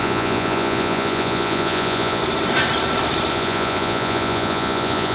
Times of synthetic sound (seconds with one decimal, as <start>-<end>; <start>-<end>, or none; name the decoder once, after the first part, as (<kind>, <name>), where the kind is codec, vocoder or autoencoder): 0.0-2.2 (vocoder, Vocos); 3.3-5.1